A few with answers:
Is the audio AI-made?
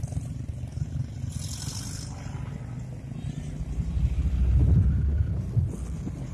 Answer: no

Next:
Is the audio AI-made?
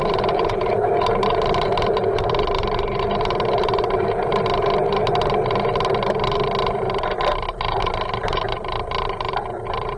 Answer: no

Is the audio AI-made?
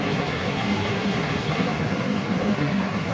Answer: yes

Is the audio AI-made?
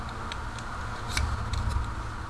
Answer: no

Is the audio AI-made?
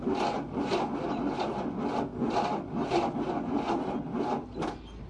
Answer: no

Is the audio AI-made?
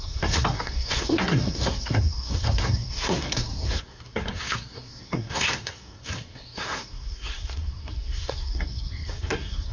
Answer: yes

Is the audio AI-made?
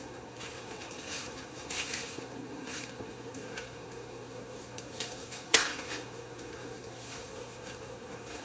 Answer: yes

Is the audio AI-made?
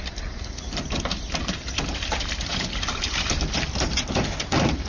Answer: no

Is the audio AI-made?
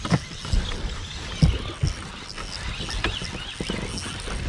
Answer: no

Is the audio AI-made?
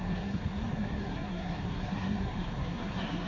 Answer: yes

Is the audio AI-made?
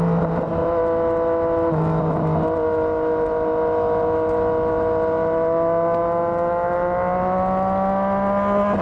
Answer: no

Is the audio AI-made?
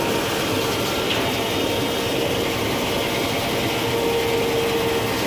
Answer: no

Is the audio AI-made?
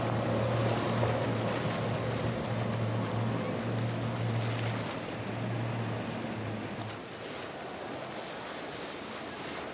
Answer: no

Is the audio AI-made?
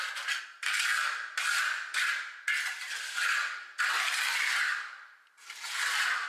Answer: no